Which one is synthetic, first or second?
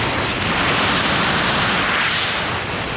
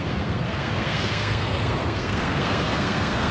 second